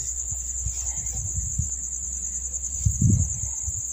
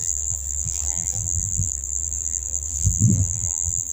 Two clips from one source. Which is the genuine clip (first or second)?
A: first